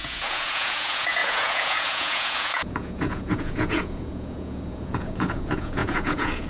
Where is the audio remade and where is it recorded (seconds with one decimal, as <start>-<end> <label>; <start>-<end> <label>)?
0.0-6.5 remade